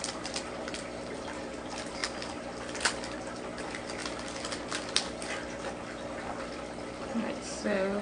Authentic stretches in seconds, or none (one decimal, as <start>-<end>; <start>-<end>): 2.0-3.6; 4.0-6.2